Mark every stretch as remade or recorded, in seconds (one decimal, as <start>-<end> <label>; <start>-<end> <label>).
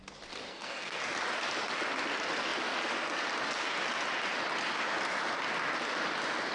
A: 0.0-0.5 recorded; 0.5-1.0 remade; 1.0-6.5 recorded